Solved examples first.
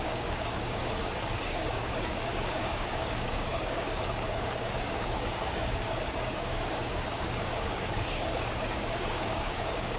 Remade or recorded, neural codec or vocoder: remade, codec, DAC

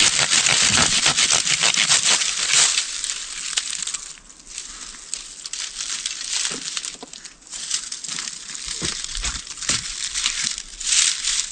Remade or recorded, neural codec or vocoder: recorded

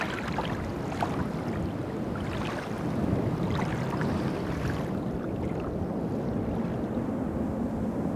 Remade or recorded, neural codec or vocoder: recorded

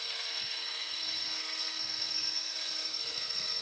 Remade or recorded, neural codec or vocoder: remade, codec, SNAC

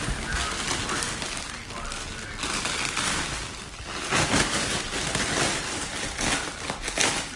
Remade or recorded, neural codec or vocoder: recorded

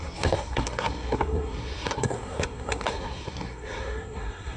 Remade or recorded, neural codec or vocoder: remade, codec, SNAC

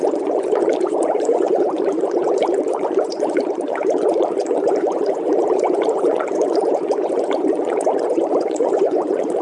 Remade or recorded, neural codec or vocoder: remade, vocoder, Vocos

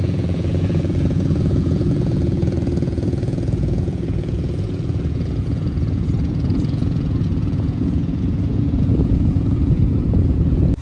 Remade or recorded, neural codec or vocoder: remade, vocoder, Vocos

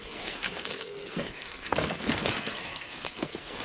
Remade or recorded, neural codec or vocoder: remade, codec, SNAC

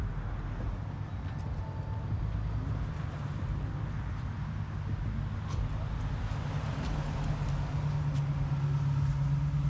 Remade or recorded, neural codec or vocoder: recorded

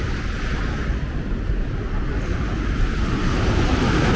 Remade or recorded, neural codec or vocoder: recorded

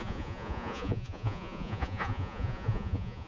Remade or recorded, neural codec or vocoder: remade, vocoder, Vocos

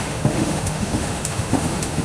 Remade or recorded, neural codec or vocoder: remade, autoencoder, DAC-VAE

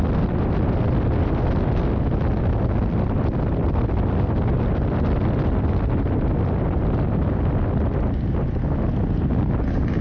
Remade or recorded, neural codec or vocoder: recorded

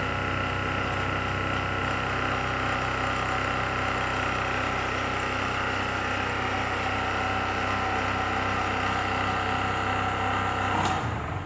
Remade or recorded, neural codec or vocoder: recorded